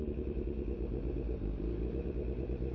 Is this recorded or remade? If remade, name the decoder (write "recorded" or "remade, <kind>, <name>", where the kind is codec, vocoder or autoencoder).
recorded